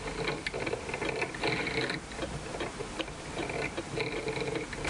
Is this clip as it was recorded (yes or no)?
yes